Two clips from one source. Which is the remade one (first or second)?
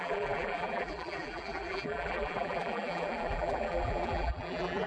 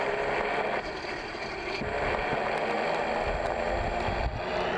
first